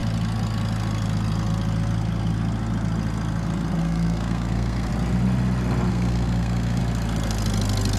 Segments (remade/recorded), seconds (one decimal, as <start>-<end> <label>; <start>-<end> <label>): 0.0-3.8 recorded; 3.8-4.9 remade; 4.9-5.9 recorded; 5.9-6.8 remade; 6.8-8.0 recorded